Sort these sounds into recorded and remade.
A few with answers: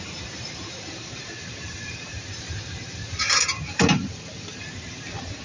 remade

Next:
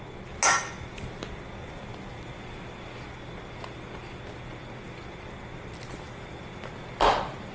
recorded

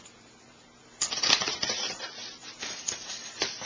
remade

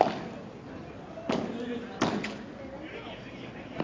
recorded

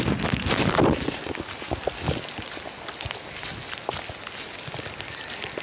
recorded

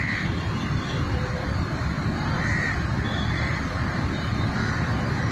remade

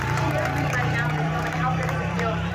remade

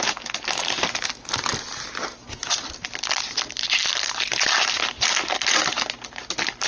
recorded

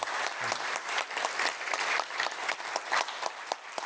remade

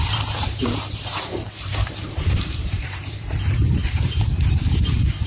remade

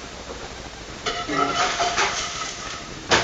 remade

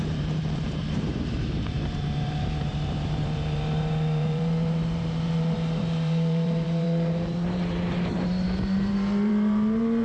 remade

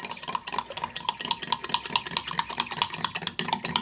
recorded